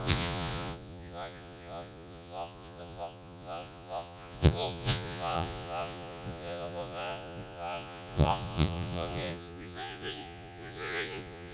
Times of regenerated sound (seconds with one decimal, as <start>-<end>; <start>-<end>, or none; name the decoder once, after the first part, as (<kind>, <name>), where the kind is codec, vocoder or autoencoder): 0.0-11.5 (vocoder, Vocos)